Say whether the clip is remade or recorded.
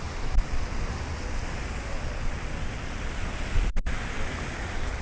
recorded